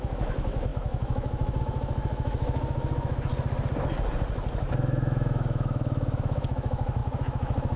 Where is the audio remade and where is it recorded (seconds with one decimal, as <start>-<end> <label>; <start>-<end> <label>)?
0.0-3.3 remade; 3.3-4.6 recorded; 4.6-7.8 remade